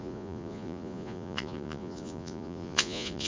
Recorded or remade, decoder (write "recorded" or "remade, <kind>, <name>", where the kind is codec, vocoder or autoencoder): remade, vocoder, Vocos